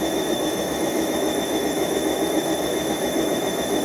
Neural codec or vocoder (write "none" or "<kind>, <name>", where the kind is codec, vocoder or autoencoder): autoencoder, DAC-VAE